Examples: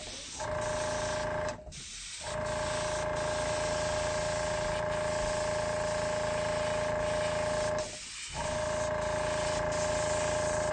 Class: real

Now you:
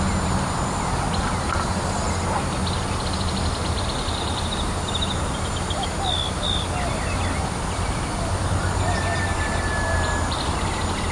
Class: real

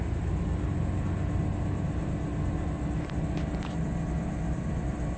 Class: real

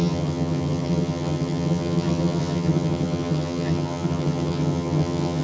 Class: fake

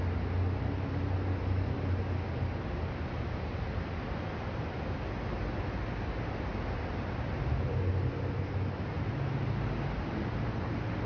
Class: real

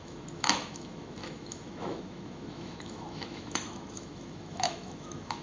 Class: fake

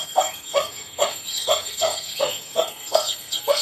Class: fake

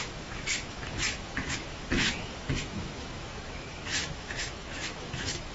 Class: fake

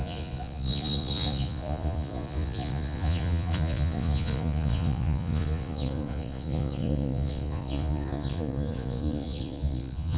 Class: fake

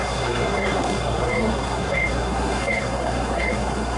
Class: fake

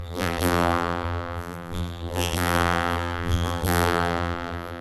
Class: fake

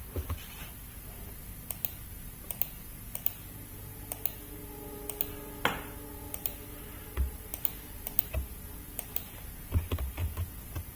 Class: real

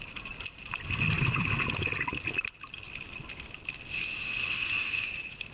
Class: real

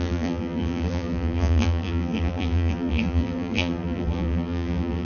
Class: fake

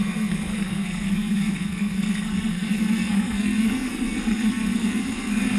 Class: fake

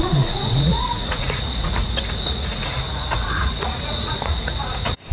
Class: fake